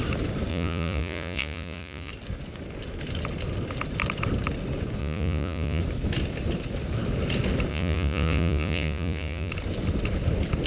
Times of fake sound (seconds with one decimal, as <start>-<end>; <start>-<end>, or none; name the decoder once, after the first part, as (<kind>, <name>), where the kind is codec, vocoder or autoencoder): 0.5-2.1 (vocoder, Vocos); 5.0-5.8; 7.7-9.5